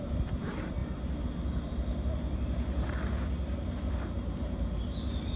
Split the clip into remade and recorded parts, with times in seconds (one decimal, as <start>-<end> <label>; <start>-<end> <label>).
0.0-0.8 remade; 0.8-4.0 recorded; 4.0-5.4 remade